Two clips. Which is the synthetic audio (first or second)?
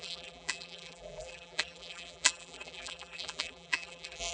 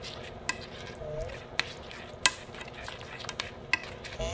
first